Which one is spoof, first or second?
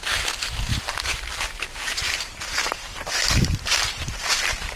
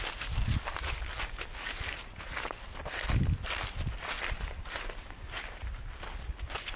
first